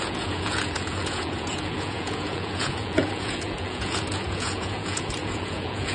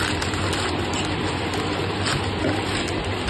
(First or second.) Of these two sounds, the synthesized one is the first